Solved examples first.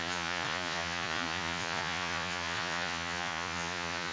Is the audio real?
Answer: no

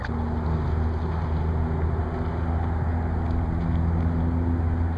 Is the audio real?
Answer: yes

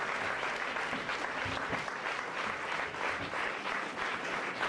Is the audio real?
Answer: yes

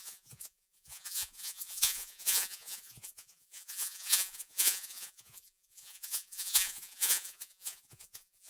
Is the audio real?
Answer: no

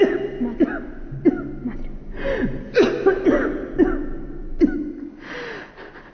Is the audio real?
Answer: yes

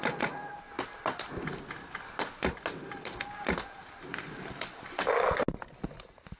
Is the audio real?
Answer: yes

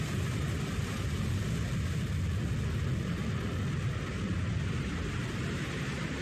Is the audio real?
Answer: yes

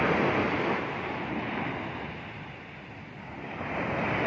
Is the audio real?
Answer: yes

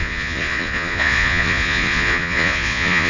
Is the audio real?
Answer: no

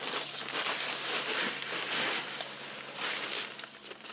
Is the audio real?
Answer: yes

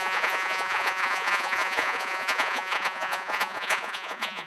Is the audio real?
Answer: no